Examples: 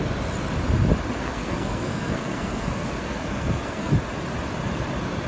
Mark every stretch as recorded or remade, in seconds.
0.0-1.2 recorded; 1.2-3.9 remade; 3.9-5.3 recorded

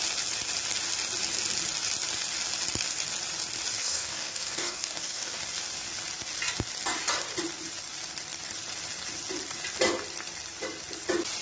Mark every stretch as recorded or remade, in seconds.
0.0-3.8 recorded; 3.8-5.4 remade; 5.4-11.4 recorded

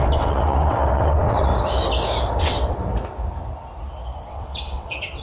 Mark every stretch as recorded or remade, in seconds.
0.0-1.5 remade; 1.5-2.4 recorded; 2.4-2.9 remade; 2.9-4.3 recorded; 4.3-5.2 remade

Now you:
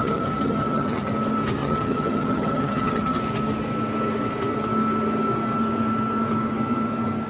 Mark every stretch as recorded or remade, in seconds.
0.0-1.1 remade; 1.1-1.6 recorded; 1.6-3.2 remade; 3.2-7.3 recorded